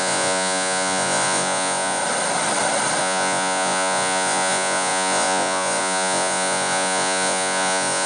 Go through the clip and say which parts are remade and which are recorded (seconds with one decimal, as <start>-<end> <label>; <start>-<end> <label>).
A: 0.0-2.0 remade; 2.0-3.0 recorded; 3.0-8.1 remade